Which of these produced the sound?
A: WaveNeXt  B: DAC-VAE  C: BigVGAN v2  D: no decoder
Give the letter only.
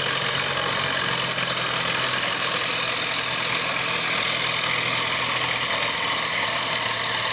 D